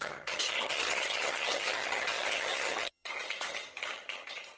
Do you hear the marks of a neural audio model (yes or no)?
yes